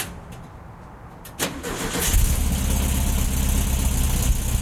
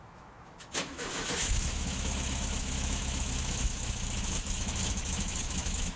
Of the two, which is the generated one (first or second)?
second